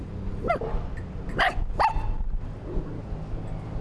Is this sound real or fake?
real